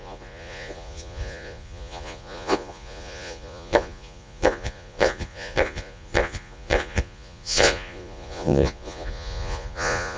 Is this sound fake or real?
fake